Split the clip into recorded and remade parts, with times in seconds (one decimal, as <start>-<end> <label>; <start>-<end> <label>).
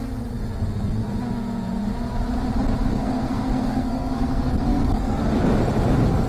0.0-2.9 recorded; 2.9-5.2 remade; 5.2-6.3 recorded